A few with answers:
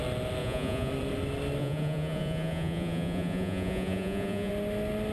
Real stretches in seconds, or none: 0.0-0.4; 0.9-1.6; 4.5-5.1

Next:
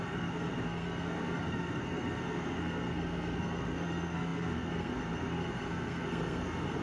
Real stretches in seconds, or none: none

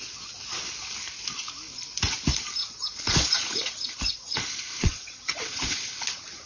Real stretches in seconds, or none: 0.0-2.6; 5.9-6.5